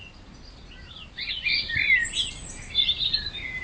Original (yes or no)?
yes